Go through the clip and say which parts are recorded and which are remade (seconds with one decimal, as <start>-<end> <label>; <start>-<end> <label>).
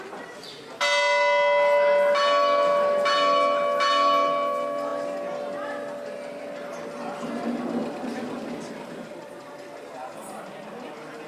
0.0-11.3 recorded